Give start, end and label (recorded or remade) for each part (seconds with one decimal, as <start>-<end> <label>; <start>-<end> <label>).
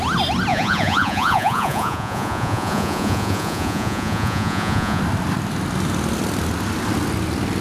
0.0-0.5 recorded; 0.5-5.0 remade; 5.0-7.6 recorded